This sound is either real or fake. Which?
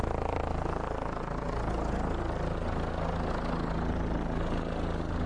real